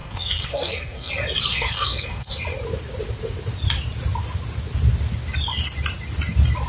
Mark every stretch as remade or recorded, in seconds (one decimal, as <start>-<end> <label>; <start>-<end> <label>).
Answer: 0.0-1.1 remade; 1.1-1.5 recorded; 1.5-2.3 remade; 2.3-6.7 recorded